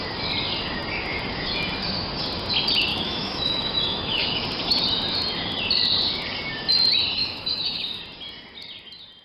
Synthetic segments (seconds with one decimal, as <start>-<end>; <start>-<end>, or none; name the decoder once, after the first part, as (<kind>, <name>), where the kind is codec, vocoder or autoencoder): 2.9-4.4 (autoencoder, DAC-VAE); 7.2-8.0